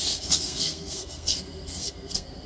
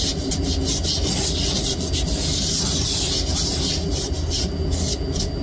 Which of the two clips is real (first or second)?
second